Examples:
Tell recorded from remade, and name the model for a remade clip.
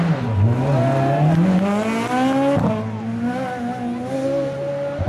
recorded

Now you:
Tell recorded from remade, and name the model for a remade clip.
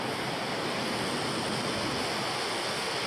recorded